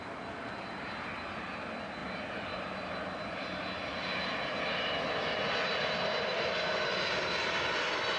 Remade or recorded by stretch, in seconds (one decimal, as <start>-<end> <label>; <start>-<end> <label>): 0.0-8.2 recorded